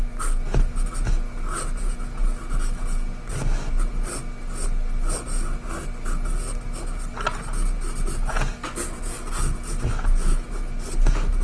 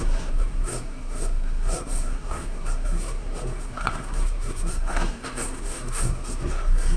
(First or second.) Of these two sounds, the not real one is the second